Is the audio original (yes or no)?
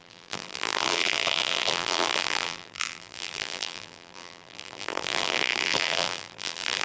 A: no